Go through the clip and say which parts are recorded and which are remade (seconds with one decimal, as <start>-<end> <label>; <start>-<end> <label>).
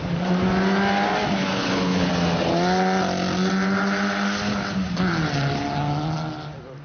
0.0-1.5 recorded; 1.5-2.1 remade; 2.1-6.8 recorded